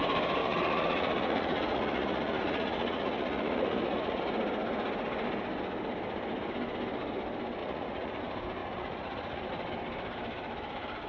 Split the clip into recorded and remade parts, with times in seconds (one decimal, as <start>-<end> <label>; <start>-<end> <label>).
0.0-0.4 recorded; 0.4-4.2 remade; 4.2-7.6 recorded; 7.6-8.2 remade; 8.2-8.6 recorded; 8.6-9.5 remade; 9.5-11.1 recorded